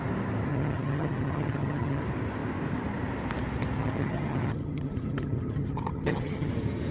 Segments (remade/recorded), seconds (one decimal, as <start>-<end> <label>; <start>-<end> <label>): 0.0-0.5 recorded; 0.5-2.0 remade; 2.0-3.8 recorded; 3.8-6.5 remade; 6.5-6.9 recorded